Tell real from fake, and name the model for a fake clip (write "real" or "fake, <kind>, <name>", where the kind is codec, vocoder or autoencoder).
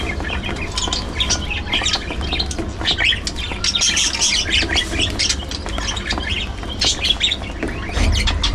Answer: real